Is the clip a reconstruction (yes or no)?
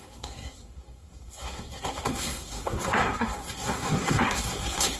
yes